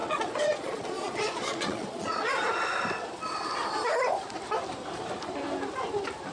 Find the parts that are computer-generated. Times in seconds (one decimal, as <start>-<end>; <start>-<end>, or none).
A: 0.0-2.3